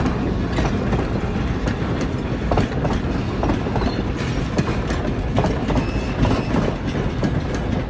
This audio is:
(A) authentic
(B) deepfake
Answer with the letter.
A